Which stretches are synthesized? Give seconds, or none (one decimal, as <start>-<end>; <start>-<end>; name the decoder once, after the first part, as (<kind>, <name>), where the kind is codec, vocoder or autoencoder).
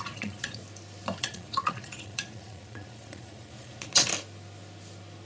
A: 0.0-0.6 (vocoder, Vocos); 1.2-4.1